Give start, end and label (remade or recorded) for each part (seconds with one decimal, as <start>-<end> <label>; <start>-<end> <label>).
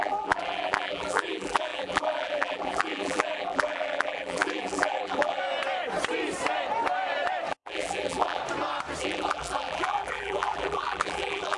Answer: 0.0-5.4 remade; 5.4-7.5 recorded; 7.5-8.4 remade; 8.4-9.0 recorded; 9.0-11.6 remade